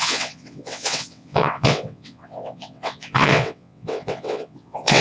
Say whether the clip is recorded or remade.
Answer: remade